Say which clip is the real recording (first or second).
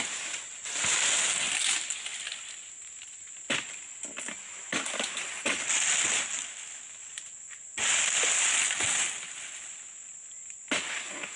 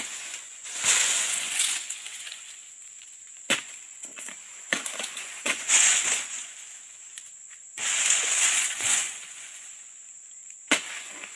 first